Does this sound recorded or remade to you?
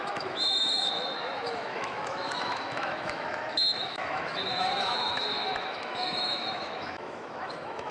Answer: remade